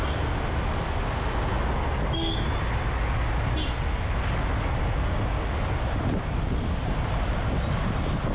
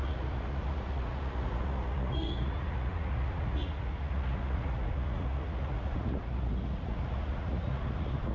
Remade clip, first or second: second